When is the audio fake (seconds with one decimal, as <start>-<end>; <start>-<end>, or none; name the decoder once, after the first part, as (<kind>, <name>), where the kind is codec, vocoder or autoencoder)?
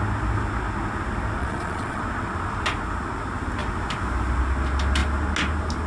1.4-2.0 (vocoder, Vocos)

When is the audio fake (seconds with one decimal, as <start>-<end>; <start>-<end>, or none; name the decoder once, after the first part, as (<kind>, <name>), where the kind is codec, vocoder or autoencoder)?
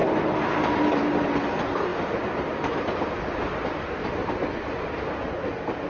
none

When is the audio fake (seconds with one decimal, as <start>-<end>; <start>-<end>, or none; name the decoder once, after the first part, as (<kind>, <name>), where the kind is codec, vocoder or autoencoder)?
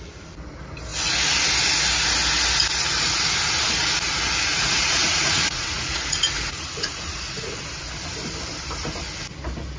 4.5-7.5 (vocoder, Vocos)